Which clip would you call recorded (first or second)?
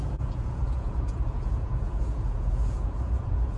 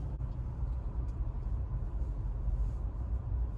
second